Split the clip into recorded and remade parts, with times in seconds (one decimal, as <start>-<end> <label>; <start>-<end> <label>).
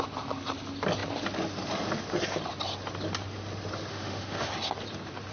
0.0-3.9 recorded; 3.9-4.5 remade; 4.5-5.3 recorded